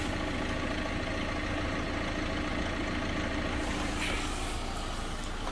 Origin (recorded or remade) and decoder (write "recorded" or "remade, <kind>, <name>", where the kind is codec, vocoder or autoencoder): recorded